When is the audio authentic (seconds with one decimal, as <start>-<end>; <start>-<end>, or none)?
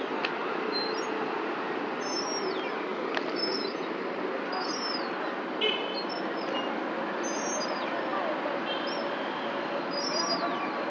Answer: 0.0-10.9